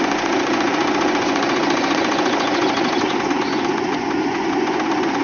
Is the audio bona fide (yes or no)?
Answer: no